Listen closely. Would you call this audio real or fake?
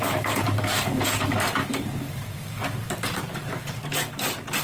fake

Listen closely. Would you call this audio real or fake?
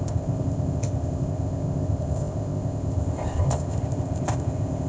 fake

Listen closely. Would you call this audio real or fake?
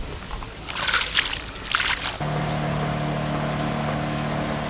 real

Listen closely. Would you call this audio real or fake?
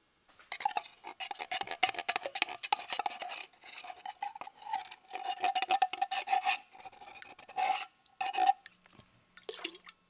real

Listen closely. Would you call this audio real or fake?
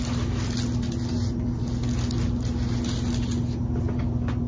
real